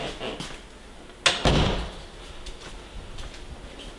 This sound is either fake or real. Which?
real